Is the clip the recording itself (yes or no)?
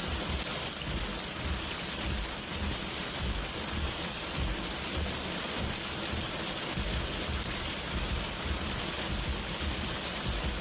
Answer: yes